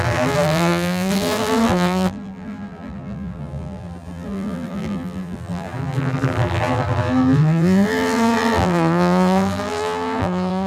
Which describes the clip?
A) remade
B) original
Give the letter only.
A